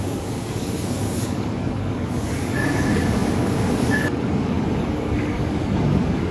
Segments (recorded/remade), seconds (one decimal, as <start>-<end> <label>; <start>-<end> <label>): 0.0-6.3 remade